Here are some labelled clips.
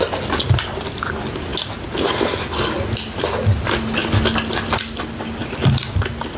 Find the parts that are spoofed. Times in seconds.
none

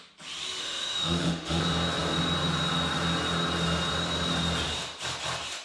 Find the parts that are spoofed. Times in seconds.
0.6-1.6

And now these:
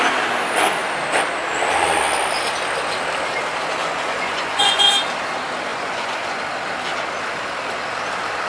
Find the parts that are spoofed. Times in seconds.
3.8-4.9; 5.7-6.4

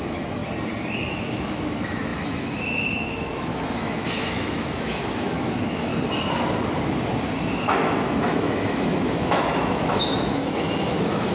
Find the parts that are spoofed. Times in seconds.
0.0-0.4; 1.1-5.9; 8.0-11.3

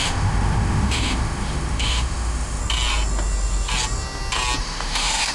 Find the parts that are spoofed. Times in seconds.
0.0-2.6; 4.6-5.3

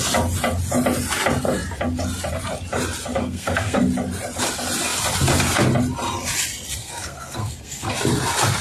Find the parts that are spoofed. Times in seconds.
3.2-3.8; 6.8-7.9

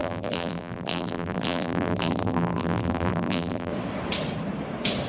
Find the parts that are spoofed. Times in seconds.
0.0-3.7

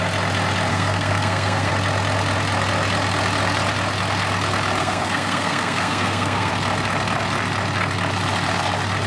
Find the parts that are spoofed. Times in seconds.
0.7-1.7; 4.8-6.5